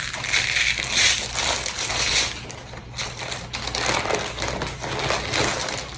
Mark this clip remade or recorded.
recorded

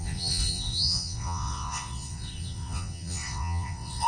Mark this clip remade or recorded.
remade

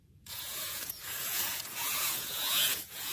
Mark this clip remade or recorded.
remade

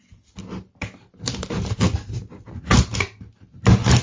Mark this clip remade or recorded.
recorded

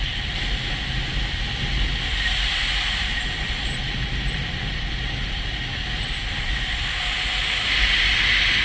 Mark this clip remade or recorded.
recorded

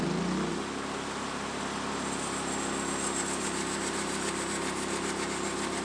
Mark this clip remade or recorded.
recorded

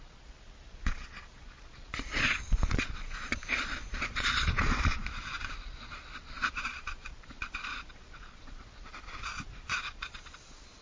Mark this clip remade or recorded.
remade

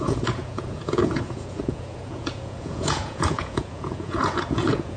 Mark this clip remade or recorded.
remade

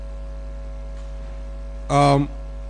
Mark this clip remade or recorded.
recorded